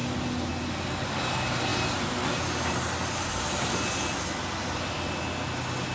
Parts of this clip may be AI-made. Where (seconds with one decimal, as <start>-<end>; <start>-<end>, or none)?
none